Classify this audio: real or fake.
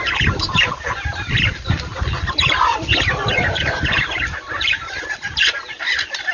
fake